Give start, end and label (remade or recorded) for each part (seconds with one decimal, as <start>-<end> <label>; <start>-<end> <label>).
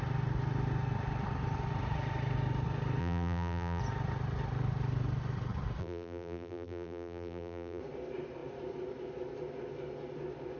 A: 0.0-3.0 recorded; 3.0-3.8 remade; 3.8-5.8 recorded; 5.8-7.8 remade; 7.8-10.6 recorded